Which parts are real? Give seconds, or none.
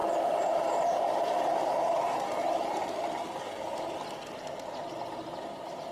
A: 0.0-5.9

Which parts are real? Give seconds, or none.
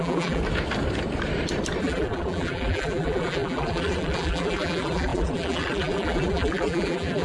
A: 0.4-1.8